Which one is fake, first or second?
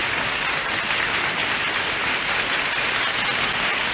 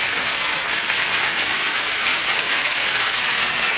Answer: second